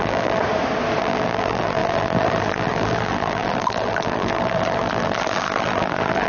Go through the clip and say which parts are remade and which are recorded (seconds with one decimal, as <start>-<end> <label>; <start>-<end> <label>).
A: 0.0-0.4 remade; 0.4-1.0 recorded; 1.0-6.3 remade